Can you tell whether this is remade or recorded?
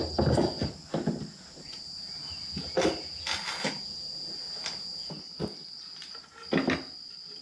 recorded